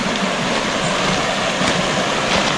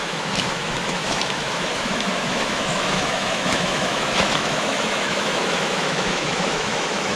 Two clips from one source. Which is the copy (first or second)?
second